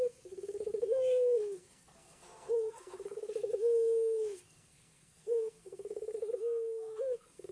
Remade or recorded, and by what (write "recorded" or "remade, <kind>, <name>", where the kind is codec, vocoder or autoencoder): remade, codec, SNAC